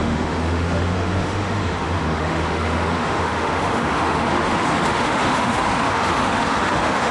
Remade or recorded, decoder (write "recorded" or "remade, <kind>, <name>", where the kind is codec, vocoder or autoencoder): remade, autoencoder, DAC-VAE